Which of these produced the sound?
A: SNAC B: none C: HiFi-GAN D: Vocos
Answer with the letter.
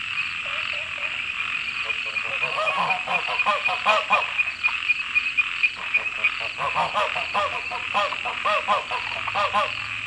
B